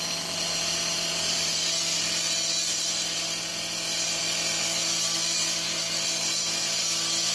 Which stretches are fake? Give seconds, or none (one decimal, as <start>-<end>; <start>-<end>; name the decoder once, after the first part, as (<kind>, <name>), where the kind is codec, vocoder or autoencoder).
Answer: none